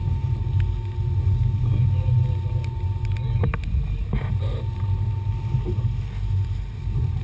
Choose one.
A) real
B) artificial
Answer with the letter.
A